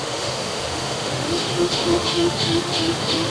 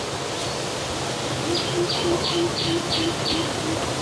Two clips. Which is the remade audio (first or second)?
first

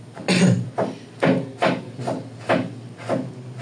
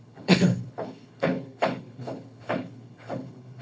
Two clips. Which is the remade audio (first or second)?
second